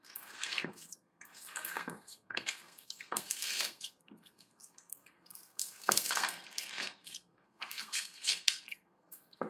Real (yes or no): no